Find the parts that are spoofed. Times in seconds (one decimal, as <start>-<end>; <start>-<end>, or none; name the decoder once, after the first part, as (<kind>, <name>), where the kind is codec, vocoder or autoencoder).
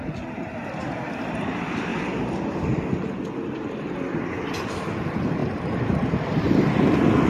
5.4-6.8 (vocoder, BigVGAN v2)